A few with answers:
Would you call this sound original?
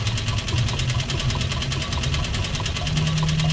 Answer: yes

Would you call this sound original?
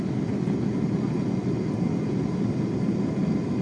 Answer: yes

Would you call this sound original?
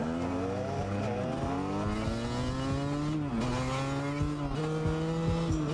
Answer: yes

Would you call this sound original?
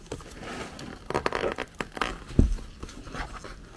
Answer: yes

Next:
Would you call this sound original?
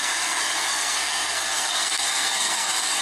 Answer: no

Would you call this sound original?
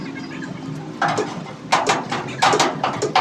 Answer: yes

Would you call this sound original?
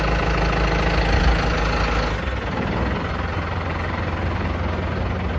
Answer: yes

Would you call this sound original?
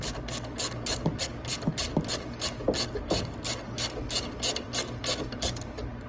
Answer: yes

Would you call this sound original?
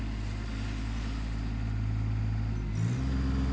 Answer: yes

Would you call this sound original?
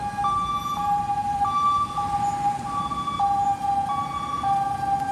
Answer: yes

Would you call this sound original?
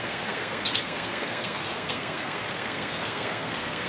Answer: no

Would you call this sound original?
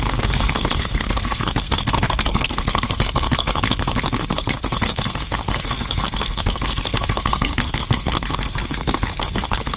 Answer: no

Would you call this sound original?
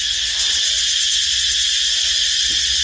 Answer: yes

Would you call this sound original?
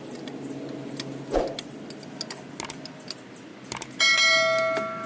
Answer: yes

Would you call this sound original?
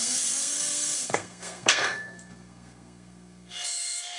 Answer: no